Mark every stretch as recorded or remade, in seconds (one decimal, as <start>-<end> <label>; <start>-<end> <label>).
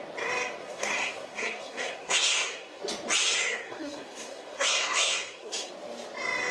0.0-0.6 recorded; 0.6-2.8 remade; 2.8-3.2 recorded; 3.2-5.7 remade; 5.7-6.5 recorded